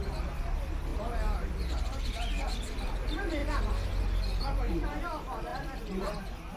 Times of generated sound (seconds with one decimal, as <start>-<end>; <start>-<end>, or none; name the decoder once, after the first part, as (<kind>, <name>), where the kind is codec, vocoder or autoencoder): none